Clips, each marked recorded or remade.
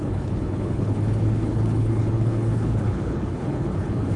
remade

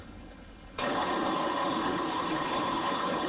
remade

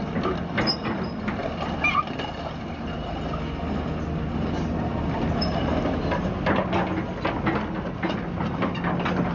recorded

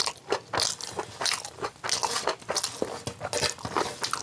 recorded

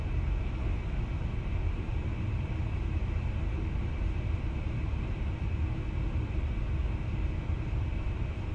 recorded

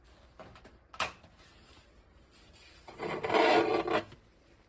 recorded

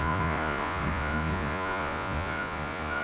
remade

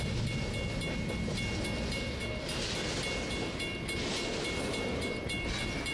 recorded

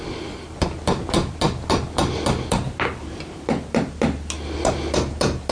recorded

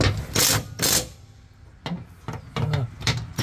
recorded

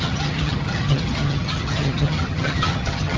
remade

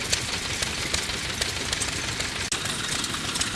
recorded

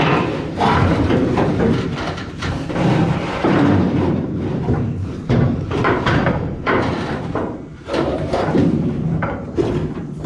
remade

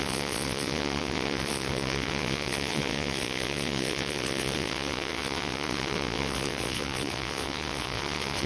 remade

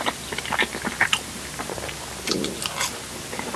recorded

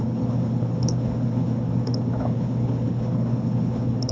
remade